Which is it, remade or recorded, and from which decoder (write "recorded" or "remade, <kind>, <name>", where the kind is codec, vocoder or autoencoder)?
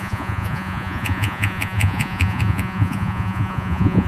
remade, vocoder, Vocos